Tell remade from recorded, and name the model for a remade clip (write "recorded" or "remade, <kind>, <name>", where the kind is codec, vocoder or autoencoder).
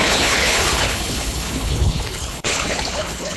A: remade, codec, HILCodec